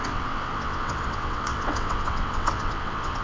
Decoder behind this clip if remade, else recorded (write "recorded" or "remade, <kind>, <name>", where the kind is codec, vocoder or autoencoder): remade, vocoder, WaveNeXt